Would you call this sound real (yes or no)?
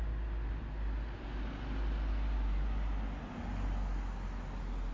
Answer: yes